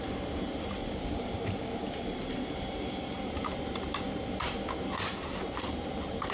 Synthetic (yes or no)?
yes